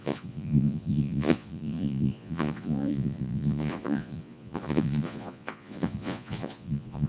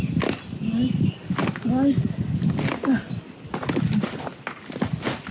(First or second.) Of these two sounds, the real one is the second